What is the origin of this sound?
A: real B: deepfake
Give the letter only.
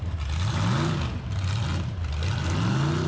A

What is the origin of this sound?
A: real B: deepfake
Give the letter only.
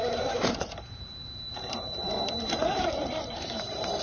B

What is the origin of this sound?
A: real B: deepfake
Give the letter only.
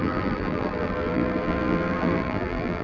B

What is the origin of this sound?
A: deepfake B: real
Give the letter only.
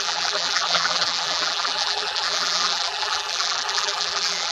A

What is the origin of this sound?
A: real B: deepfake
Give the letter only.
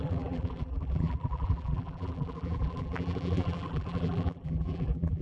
B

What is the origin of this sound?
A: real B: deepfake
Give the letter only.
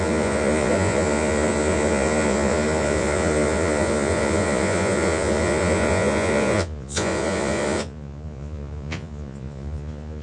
B